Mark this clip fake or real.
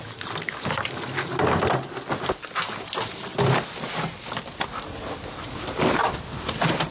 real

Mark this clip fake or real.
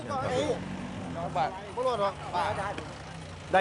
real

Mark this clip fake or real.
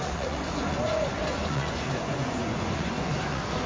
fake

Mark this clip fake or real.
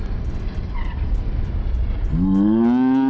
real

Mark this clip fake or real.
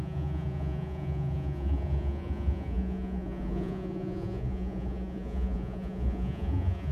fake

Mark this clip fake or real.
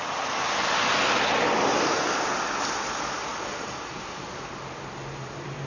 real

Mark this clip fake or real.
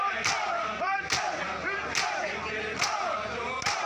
real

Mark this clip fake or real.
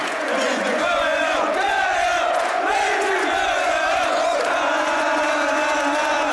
fake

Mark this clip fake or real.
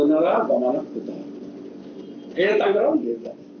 real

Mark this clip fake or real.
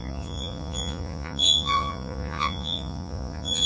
fake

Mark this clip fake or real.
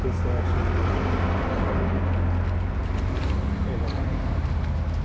real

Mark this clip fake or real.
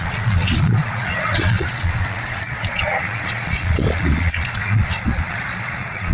fake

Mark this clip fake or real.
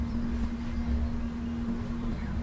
real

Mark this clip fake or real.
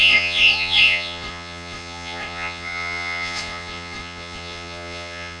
fake